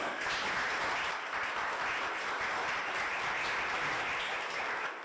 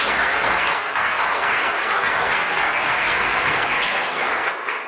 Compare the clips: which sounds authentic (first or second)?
first